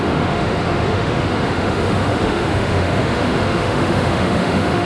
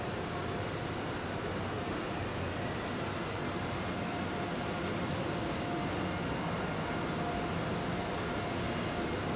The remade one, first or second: first